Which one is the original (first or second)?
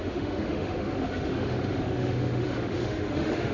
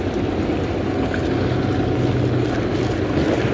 second